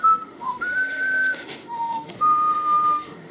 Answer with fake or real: fake